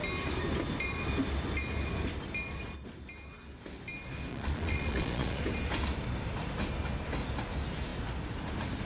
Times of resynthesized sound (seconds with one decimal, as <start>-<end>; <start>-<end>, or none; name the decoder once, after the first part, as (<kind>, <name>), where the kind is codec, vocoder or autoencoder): 4.3-5.4 (vocoder, Vocos)